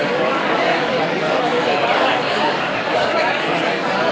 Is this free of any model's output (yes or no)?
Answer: no